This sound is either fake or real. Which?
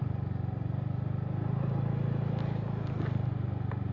real